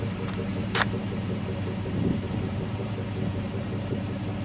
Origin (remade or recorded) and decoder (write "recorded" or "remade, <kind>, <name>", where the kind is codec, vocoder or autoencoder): remade, vocoder, BigVGAN v2